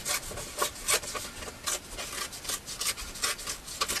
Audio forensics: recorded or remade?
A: recorded